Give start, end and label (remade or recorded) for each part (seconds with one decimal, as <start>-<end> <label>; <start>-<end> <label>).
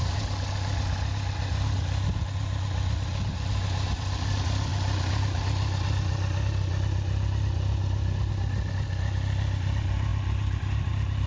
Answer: 0.0-11.3 recorded